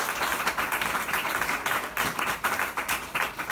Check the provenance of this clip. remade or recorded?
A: recorded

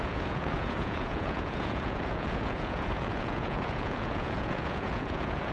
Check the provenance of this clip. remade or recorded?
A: remade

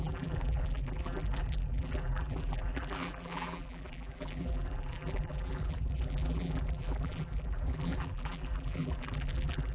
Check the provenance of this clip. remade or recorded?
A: remade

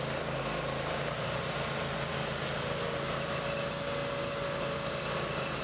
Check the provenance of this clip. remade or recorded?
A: recorded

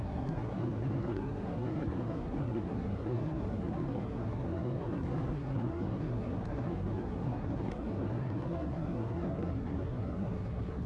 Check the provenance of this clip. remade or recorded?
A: remade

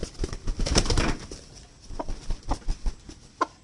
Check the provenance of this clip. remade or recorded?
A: recorded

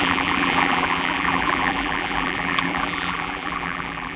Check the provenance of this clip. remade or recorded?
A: remade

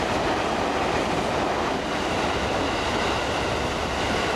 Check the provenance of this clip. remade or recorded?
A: recorded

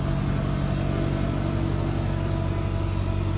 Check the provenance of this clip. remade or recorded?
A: recorded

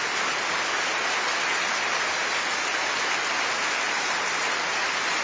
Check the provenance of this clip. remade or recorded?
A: recorded